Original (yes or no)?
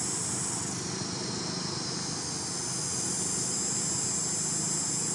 yes